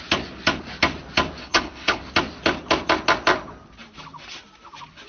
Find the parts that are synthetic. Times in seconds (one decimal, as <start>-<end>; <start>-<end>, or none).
1.4-2.0